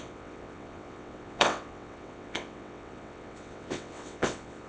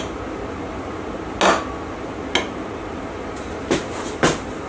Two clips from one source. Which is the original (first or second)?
second